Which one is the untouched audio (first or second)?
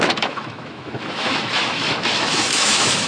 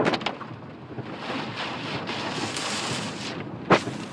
second